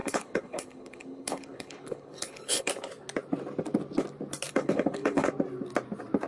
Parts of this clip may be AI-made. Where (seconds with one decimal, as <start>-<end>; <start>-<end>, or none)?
0.0-2.7; 4.5-5.3